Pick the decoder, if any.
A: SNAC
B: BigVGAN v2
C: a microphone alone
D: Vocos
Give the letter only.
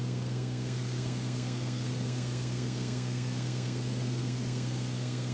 A